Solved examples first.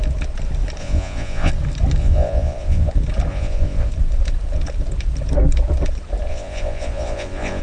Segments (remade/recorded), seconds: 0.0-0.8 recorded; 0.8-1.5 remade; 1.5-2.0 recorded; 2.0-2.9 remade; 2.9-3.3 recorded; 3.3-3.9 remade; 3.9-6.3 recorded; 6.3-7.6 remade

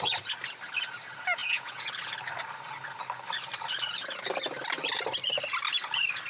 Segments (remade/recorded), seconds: 0.0-1.4 recorded; 1.4-1.9 remade; 1.9-6.3 recorded

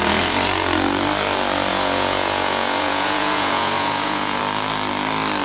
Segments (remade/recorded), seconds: 0.0-1.7 recorded; 1.7-4.4 remade; 4.4-5.4 recorded

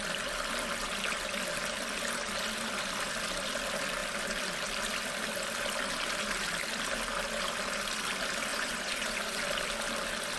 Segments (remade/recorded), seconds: 0.0-8.5 recorded; 8.5-9.4 remade; 9.4-10.4 recorded

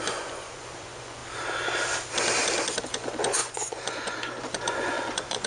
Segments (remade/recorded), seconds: 0.0-1.2 remade; 1.2-2.8 recorded; 2.8-5.5 remade